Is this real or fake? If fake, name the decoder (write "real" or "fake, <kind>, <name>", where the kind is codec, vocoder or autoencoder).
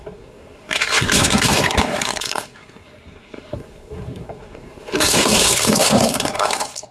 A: fake, codec, SNAC